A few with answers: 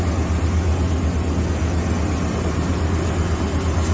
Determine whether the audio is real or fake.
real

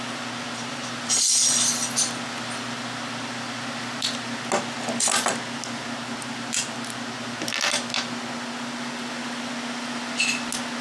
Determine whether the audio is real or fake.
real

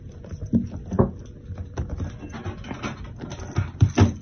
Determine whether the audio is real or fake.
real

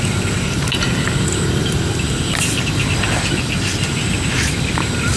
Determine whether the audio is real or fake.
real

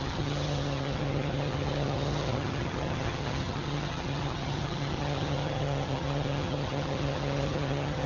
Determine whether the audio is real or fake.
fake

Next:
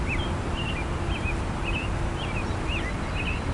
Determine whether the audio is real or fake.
real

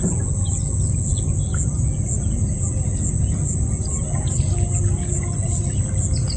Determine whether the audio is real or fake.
real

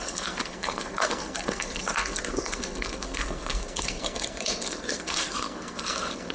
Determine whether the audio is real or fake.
fake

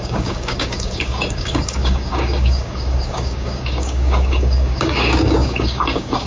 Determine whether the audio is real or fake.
fake